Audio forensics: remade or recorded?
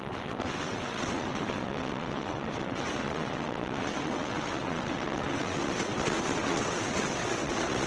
remade